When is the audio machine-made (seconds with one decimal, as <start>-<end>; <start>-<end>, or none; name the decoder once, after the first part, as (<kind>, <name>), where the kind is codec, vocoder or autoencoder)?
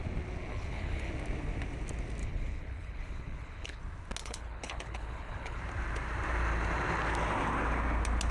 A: 0.5-1.1 (codec, HILCodec); 2.2-3.8; 4.2-5.6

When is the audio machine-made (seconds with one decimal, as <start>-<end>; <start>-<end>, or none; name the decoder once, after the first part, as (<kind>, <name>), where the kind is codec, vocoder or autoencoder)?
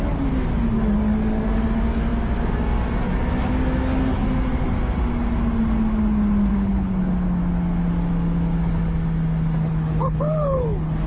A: 6.5-7.0 (codec, HILCodec); 9.7-11.1